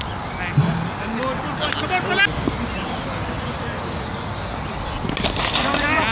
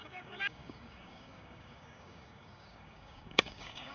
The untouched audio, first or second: first